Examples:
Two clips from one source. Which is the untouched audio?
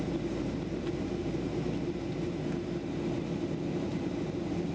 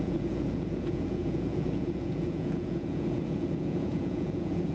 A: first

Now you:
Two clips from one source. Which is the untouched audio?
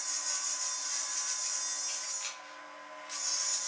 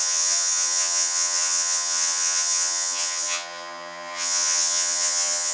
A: first